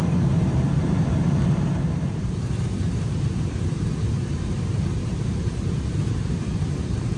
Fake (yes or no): yes